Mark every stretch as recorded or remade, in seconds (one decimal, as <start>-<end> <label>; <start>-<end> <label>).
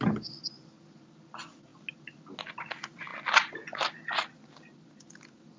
0.0-5.6 recorded